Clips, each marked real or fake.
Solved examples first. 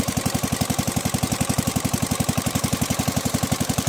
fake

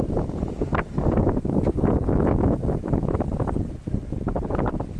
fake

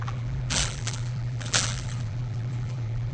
fake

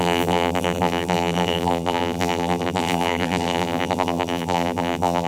fake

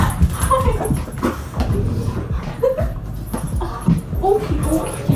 real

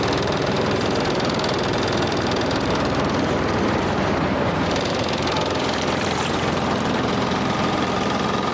fake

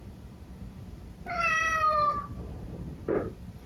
fake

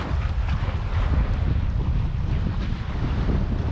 real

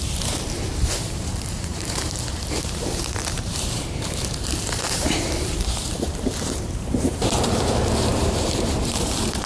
fake